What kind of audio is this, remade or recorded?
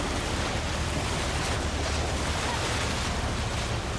recorded